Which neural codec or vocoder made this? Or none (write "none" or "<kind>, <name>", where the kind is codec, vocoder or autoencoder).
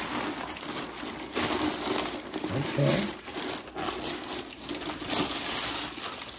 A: none